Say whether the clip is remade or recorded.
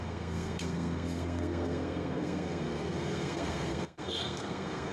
remade